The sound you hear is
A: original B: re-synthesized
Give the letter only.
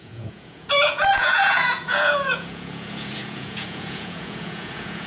B